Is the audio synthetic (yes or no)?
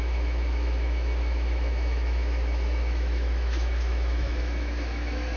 yes